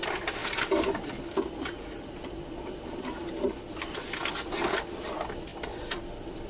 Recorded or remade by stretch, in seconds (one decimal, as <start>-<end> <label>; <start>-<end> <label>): 0.0-6.5 recorded